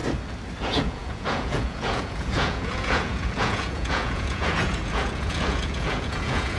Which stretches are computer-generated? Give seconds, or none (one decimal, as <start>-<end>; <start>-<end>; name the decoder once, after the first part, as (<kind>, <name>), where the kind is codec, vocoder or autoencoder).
0.6-6.6 (vocoder, Vocos)